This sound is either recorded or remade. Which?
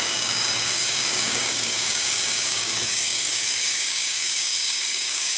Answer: remade